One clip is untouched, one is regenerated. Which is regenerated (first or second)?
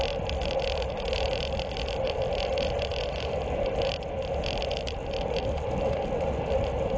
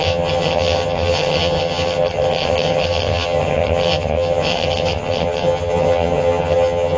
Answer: second